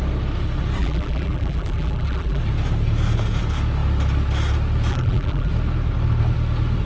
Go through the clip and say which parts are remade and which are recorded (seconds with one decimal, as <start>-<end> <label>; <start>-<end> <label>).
0.0-0.8 recorded; 0.8-2.4 remade; 2.4-4.9 recorded; 4.9-5.5 remade; 5.5-6.9 recorded